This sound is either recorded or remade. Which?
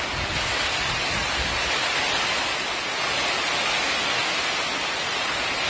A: recorded